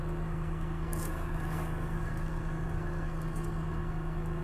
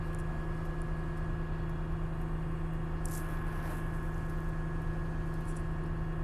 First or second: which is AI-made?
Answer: first